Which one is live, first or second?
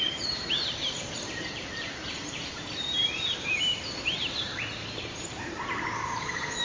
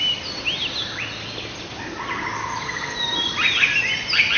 second